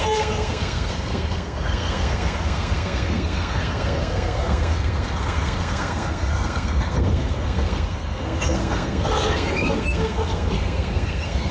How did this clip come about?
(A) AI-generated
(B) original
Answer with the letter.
A